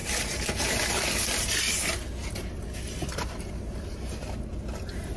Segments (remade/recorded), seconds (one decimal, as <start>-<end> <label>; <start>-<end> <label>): 0.0-0.9 remade; 0.9-3.1 recorded; 3.1-4.6 remade; 4.6-5.2 recorded